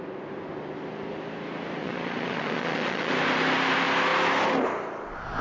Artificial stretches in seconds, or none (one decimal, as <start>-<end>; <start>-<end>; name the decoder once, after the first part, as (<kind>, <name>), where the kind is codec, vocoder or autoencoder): 1.8-3.1 (vocoder, Vocos)